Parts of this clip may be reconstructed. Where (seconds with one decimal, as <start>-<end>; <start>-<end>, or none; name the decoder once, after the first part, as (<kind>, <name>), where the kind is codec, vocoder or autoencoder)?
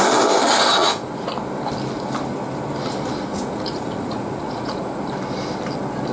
0.8-1.3 (vocoder, Vocos); 3.3-5.0